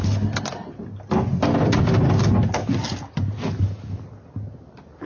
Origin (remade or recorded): recorded